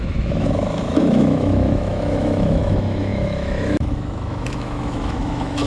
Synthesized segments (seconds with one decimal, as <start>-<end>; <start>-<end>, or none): 0.0-5.7